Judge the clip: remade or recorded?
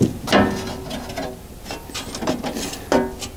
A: recorded